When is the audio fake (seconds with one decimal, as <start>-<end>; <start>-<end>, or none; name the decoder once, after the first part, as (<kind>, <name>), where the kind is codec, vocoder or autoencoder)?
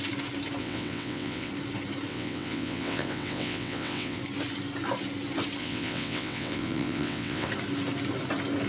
0.6-1.5 (vocoder, WaveNeXt); 2.1-4.2; 5.6-7.5